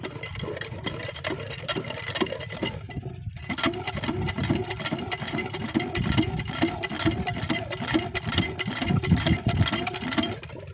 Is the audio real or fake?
real